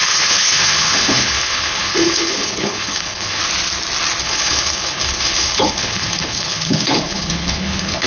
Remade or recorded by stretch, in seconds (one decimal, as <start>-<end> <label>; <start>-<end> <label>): 0.0-3.4 remade; 3.4-4.2 recorded; 4.2-8.1 remade